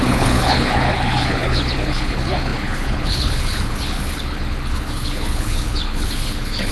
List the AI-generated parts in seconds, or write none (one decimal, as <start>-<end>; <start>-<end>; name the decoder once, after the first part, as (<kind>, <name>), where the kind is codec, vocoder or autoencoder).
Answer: 0.0-6.7 (codec, HILCodec)